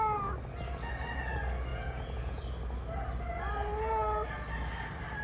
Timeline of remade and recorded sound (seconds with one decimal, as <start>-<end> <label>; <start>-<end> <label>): 0.0-1.7 recorded; 1.7-2.4 remade; 2.4-5.2 recorded